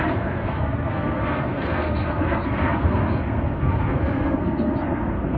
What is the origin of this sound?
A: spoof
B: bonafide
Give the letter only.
A